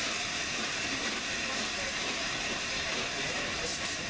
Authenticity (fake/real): fake